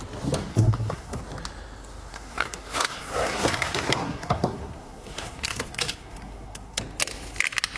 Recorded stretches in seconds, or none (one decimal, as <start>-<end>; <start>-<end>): 0.0-0.5; 1.2-2.1; 6.8-7.8